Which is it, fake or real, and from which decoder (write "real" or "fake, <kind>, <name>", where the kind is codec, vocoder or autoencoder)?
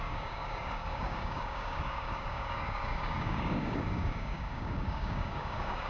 fake, codec, DAC